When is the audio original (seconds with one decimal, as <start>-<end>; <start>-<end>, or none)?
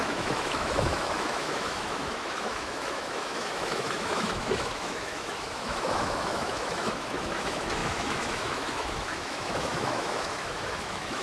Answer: none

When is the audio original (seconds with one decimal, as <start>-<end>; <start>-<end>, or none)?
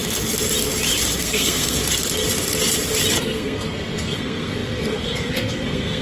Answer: 0.0-1.2; 1.8-3.2